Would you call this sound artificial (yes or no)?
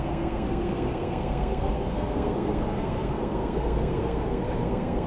yes